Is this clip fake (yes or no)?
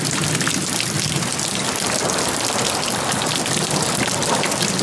no